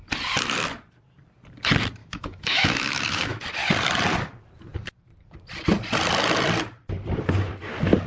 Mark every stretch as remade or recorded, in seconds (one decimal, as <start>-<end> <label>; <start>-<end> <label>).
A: 0.0-2.0 recorded; 2.0-3.4 remade; 3.4-8.1 recorded